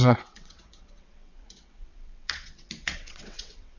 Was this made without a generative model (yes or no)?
no